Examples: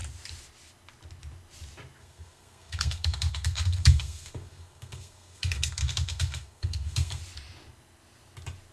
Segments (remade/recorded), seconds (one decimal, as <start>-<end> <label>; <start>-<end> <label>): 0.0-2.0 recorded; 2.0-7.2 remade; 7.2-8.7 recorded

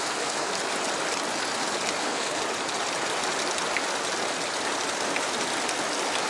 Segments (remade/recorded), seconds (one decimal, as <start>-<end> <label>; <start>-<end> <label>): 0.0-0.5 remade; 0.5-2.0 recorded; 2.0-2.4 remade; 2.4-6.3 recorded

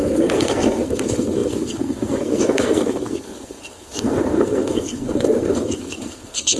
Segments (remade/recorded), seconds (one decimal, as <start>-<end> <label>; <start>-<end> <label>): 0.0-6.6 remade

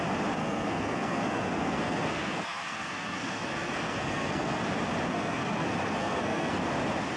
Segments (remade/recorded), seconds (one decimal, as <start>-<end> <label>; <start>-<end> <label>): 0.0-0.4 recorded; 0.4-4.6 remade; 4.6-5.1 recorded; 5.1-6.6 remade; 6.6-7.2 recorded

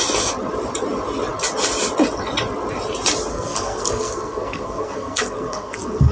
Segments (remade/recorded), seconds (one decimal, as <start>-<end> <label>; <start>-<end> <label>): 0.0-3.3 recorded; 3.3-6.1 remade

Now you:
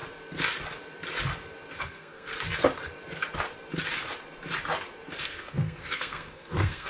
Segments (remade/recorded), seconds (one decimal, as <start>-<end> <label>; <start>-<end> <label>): 0.0-1.8 recorded; 1.8-2.3 remade; 2.3-5.2 recorded; 5.2-6.9 remade

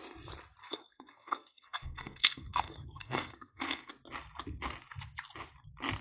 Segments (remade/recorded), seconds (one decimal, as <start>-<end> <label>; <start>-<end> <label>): 0.0-0.6 recorded; 0.6-3.9 remade; 3.9-6.0 recorded